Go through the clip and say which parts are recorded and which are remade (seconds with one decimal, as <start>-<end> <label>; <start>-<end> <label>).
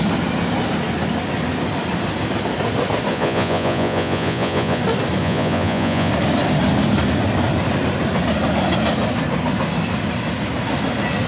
0.0-3.1 recorded; 3.1-4.8 remade; 4.8-5.2 recorded; 5.2-6.1 remade; 6.1-11.3 recorded